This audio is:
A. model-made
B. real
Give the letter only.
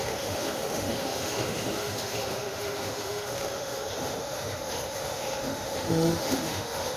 A